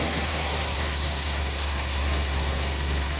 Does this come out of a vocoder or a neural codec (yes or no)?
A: yes